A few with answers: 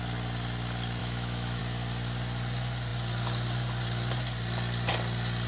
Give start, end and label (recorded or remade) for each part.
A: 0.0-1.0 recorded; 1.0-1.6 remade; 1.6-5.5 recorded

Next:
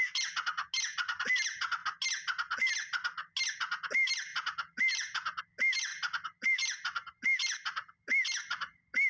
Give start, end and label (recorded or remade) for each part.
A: 0.0-9.1 recorded

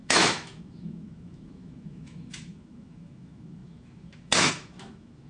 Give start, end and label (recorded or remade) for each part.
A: 0.0-5.3 remade

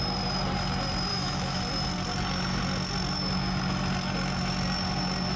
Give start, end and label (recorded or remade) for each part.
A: 0.0-1.1 recorded; 1.1-1.6 remade; 1.6-5.4 recorded

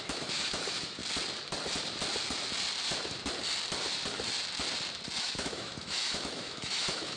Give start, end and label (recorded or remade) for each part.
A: 0.0-1.0 remade; 1.0-5.2 recorded; 5.2-7.2 remade